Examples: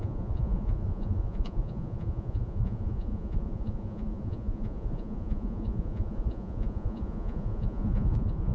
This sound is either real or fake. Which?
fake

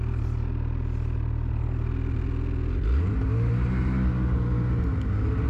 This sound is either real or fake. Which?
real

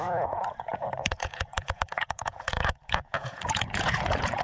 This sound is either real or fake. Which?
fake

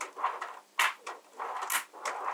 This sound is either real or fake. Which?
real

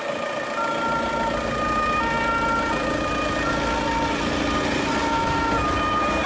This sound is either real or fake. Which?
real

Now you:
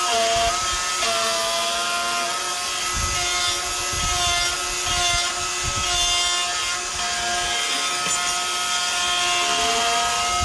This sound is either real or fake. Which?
real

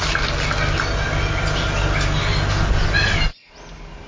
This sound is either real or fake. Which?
real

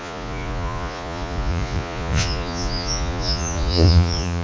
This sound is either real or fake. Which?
fake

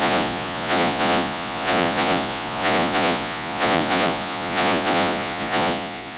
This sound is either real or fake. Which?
fake